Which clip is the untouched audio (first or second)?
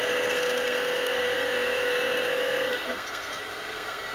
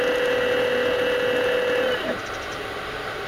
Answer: second